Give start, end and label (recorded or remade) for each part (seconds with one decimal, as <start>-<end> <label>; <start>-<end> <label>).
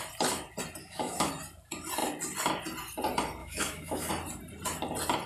0.0-0.8 recorded; 0.8-1.3 remade; 1.3-3.4 recorded; 3.4-4.1 remade; 4.1-5.3 recorded